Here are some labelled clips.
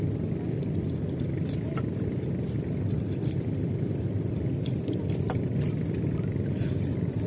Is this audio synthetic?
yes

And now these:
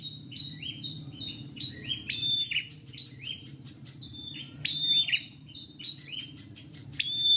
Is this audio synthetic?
yes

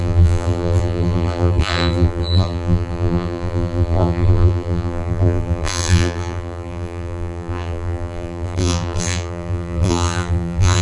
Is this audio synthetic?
yes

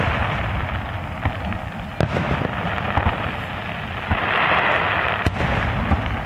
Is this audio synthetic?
no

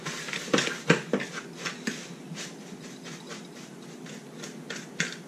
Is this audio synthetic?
no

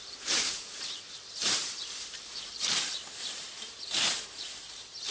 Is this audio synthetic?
yes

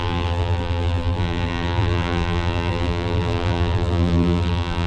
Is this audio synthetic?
yes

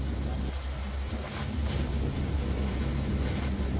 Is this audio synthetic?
no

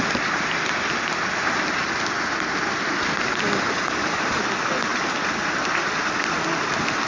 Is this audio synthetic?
no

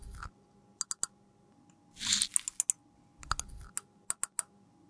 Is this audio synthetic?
no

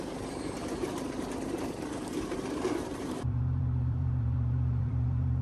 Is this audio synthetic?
yes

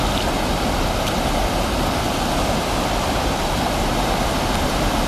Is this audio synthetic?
no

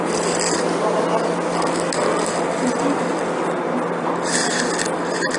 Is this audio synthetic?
no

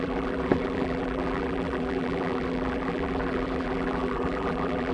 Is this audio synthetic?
yes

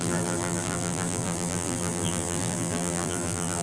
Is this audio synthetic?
yes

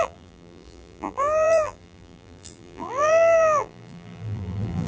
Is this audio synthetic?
yes